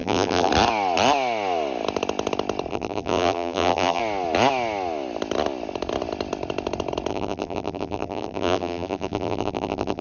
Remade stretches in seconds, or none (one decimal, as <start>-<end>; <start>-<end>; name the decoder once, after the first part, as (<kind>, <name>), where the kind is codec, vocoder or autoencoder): 0.0-0.5 (vocoder, BigVGAN v2); 2.7-4.0; 7.1-10.0